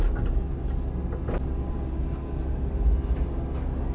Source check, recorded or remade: recorded